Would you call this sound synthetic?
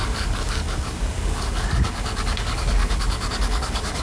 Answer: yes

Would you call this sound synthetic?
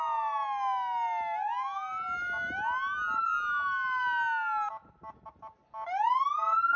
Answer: no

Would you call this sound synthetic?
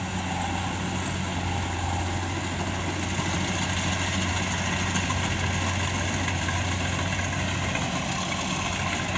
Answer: no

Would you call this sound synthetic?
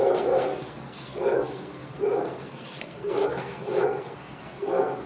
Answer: yes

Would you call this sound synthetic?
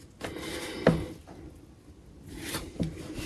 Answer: no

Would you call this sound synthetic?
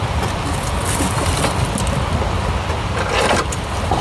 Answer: no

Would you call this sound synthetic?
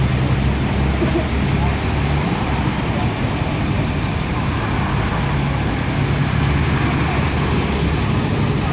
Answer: no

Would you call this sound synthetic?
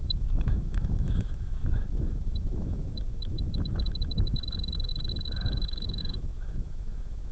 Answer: yes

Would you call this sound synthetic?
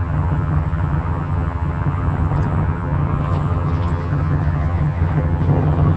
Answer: yes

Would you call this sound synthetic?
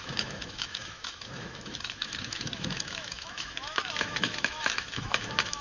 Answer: yes